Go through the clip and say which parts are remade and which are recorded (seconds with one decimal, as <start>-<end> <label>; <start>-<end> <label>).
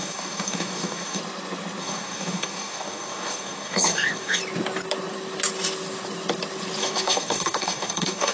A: 0.0-1.2 remade; 1.2-1.8 recorded; 1.8-4.4 remade; 4.4-6.8 recorded; 6.8-8.3 remade